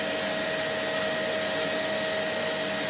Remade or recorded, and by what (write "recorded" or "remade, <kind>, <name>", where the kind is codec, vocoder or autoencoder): recorded